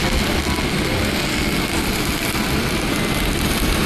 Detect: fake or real real